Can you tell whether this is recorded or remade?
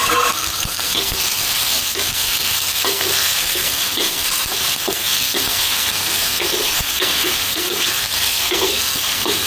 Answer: remade